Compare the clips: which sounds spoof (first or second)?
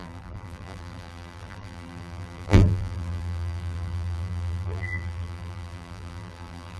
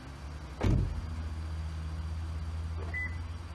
first